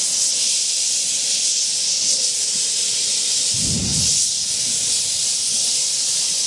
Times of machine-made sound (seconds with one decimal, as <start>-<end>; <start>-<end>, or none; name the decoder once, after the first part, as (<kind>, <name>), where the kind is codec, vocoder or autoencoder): 3.9-5.9 (vocoder, BigVGAN v2)